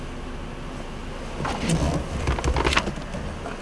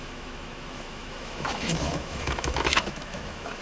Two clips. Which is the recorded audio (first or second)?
first